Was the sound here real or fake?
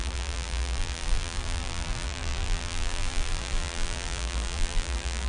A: fake